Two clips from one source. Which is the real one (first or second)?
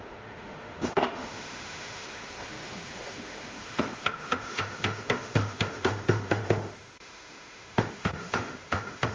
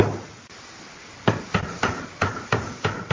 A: second